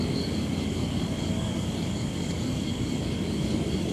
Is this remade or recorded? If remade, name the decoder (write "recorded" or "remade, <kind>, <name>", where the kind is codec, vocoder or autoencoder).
remade, codec, DAC